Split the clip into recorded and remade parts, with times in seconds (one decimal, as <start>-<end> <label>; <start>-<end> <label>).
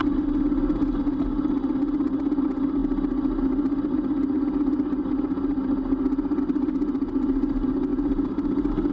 0.0-8.9 recorded